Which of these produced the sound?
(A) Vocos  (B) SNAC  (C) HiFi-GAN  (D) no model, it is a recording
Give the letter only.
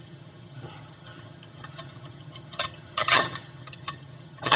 C